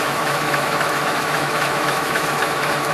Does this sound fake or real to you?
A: fake